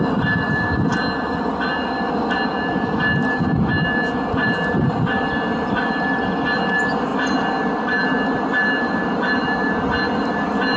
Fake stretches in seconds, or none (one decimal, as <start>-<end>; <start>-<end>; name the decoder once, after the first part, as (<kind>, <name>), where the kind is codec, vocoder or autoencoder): none